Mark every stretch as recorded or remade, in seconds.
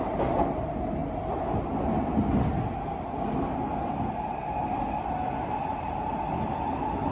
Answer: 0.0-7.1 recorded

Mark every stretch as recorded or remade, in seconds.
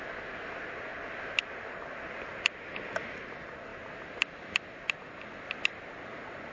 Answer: 0.0-6.5 recorded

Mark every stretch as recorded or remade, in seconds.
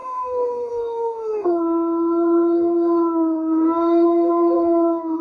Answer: 0.0-5.2 remade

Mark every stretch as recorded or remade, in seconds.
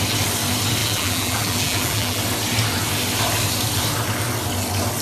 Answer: 0.0-0.8 recorded; 0.8-2.2 remade; 2.2-5.0 recorded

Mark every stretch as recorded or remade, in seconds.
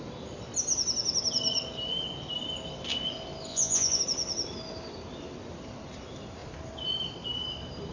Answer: 0.0-3.5 recorded; 3.5-4.0 remade; 4.0-7.9 recorded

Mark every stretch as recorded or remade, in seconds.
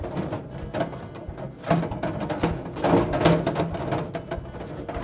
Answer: 0.0-5.0 recorded